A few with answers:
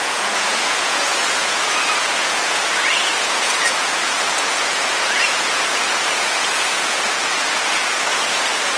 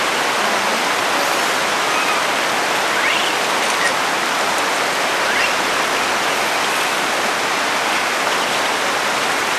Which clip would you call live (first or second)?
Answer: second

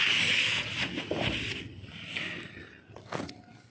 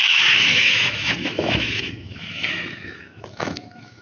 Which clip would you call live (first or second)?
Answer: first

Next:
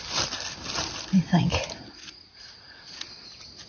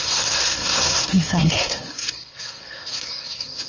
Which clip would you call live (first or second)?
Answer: first